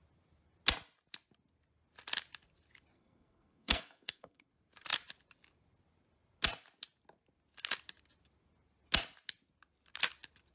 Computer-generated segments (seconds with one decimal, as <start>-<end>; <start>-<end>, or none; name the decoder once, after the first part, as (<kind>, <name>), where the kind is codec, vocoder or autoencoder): 2.9-4.5 (codec, SNAC)